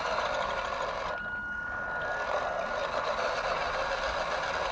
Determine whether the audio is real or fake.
real